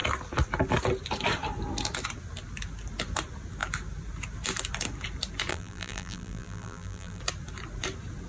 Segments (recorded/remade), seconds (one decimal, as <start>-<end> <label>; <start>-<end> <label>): 0.0-5.5 recorded; 5.5-7.2 remade; 7.2-8.3 recorded